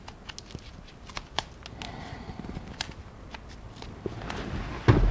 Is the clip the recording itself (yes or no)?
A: yes